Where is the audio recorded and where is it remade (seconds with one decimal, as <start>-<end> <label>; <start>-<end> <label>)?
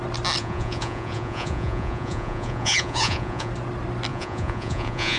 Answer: 0.0-0.4 recorded; 0.4-3.5 remade; 3.5-4.1 recorded; 4.1-5.2 remade